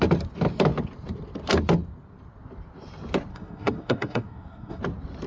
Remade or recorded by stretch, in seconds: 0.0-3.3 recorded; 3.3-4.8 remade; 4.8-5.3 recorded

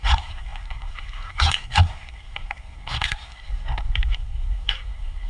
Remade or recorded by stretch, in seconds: 0.0-5.3 remade